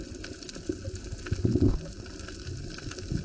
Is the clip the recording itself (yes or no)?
yes